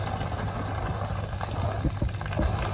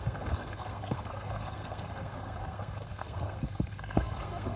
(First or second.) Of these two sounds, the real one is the first